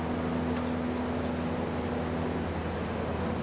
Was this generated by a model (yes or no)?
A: no